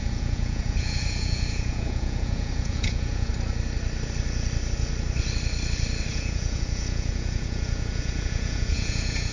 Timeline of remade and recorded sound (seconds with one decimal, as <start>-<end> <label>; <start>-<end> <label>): 0.0-3.3 remade; 3.3-6.1 recorded; 6.1-9.3 remade